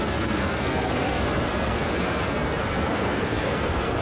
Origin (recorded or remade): remade